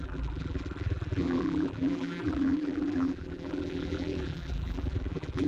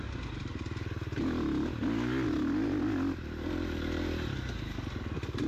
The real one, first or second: second